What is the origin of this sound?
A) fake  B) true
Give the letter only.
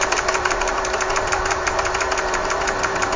A